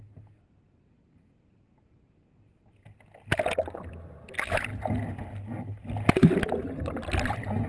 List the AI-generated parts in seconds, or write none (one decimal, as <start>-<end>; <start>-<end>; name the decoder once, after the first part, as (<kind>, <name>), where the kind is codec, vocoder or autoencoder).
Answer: none